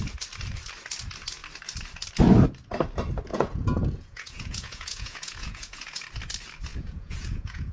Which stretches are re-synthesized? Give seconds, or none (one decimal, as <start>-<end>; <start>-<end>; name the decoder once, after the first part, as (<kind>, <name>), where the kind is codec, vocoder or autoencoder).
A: 3.3-6.0 (vocoder, Vocos); 6.7-7.7